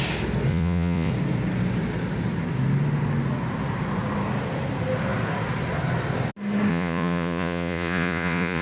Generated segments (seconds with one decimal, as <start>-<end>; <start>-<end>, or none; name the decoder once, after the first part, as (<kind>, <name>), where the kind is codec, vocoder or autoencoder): 0.5-1.1 (vocoder, Vocos); 6.7-8.6